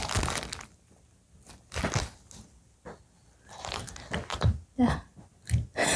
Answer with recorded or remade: recorded